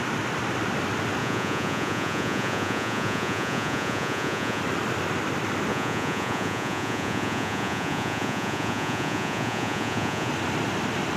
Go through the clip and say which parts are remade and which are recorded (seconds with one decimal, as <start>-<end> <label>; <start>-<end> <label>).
0.0-1.2 recorded; 1.2-4.6 remade; 4.6-5.7 recorded; 5.7-10.3 remade; 10.3-11.2 recorded